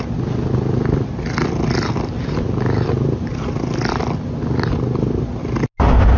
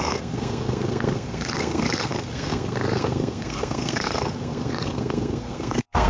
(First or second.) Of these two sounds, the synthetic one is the second